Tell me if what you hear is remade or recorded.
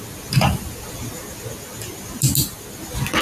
recorded